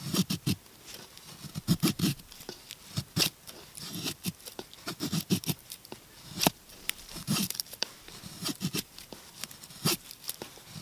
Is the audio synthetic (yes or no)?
yes